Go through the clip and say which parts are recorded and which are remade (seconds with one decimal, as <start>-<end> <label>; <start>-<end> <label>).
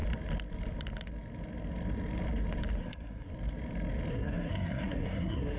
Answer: 0.0-2.8 recorded; 2.8-3.3 remade; 3.3-4.1 recorded; 4.1-5.6 remade